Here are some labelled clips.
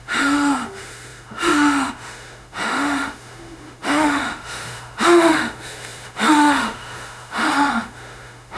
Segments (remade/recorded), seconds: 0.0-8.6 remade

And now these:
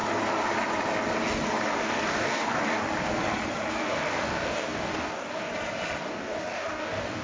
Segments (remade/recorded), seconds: 0.0-1.7 recorded; 1.7-2.8 remade; 2.8-3.7 recorded; 3.7-5.5 remade; 5.5-6.0 recorded; 6.0-7.2 remade

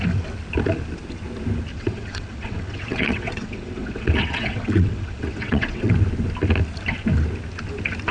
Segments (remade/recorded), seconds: 0.0-1.7 recorded; 1.7-5.9 remade; 5.9-8.1 recorded

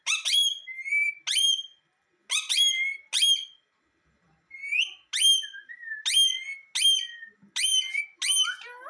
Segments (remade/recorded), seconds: 0.0-8.9 recorded

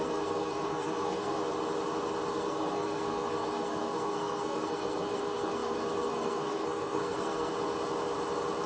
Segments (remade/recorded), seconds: 0.0-1.4 remade; 1.4-2.3 recorded; 2.3-7.5 remade; 7.5-8.7 recorded

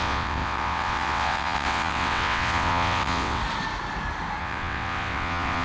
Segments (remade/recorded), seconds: 0.0-3.4 remade; 3.4-4.4 recorded; 4.4-5.6 remade

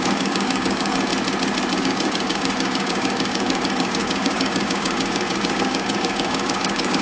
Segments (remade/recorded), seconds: 0.0-1.1 remade; 1.1-1.8 recorded; 1.8-7.0 remade

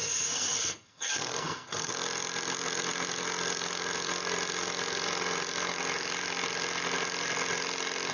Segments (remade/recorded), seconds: 0.0-1.9 remade; 1.9-8.1 recorded